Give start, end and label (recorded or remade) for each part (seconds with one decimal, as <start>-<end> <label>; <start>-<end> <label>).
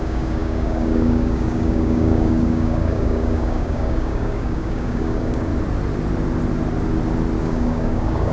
0.0-5.5 remade; 5.5-7.4 recorded; 7.4-8.3 remade